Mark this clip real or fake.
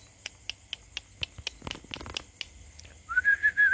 real